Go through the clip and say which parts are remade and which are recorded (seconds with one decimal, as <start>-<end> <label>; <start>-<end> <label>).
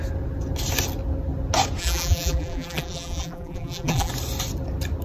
0.0-1.8 recorded; 1.8-4.1 remade; 4.1-5.0 recorded